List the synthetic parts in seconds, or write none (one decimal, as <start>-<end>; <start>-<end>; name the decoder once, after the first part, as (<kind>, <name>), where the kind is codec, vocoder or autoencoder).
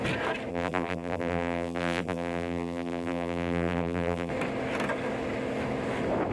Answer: 0.5-4.3 (vocoder, BigVGAN v2)